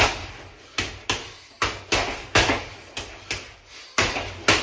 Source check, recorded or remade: recorded